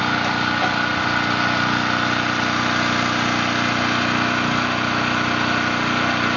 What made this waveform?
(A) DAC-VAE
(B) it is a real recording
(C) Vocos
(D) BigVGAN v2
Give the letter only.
B